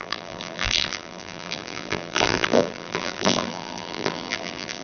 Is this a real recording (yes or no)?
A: no